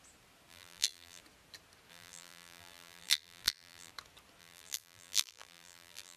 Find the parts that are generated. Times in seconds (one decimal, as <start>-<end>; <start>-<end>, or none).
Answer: 0.5-1.2; 1.9-3.9; 4.4-6.2